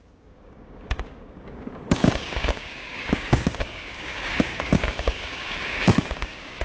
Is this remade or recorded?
remade